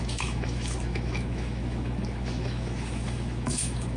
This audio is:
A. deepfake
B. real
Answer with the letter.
A